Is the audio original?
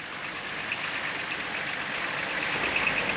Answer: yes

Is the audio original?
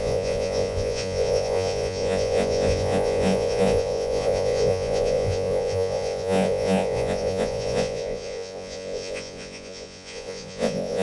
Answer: no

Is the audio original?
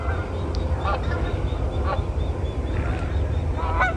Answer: yes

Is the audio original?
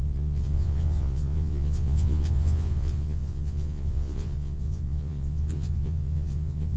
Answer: no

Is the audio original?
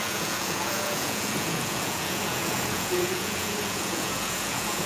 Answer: no